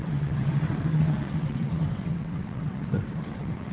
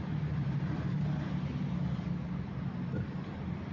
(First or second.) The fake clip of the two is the first